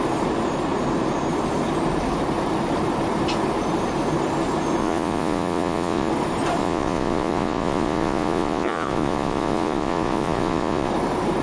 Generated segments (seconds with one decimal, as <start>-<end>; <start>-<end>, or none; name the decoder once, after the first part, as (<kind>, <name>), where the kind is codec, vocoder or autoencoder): 4.8-6.1 (vocoder, Vocos); 6.6-10.9